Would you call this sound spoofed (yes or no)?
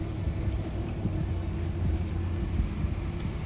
no